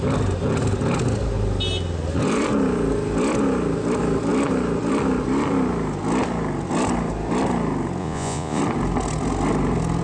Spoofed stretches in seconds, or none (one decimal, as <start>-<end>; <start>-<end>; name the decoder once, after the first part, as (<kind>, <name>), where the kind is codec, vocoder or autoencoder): 8.0-8.6 (vocoder, Vocos)